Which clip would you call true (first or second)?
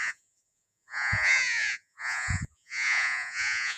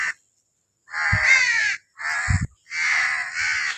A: second